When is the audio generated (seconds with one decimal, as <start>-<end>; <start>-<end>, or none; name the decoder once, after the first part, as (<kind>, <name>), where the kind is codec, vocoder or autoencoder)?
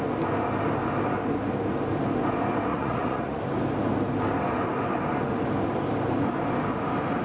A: 2.7-3.4 (vocoder, Vocos)